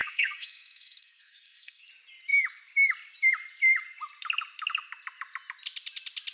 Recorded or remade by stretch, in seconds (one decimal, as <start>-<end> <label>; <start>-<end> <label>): 0.0-1.9 remade; 1.9-6.3 recorded